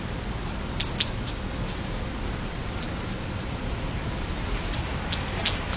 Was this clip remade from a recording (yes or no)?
no